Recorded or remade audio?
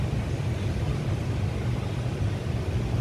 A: recorded